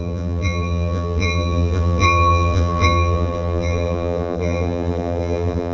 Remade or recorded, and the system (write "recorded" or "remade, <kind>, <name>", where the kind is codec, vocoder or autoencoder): remade, vocoder, BigVGAN v2